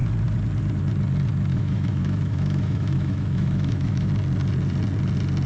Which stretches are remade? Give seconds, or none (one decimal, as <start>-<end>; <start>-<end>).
1.5-4.1